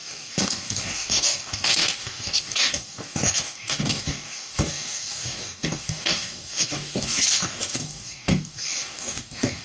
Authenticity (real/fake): fake